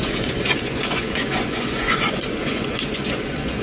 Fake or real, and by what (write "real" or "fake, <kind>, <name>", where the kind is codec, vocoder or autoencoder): fake, vocoder, Vocos